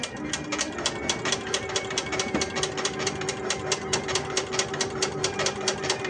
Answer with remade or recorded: recorded